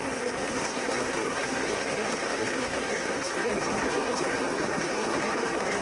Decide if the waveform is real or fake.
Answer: fake